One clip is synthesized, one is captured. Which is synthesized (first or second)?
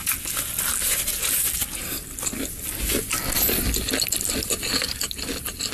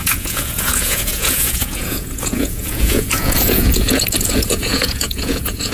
second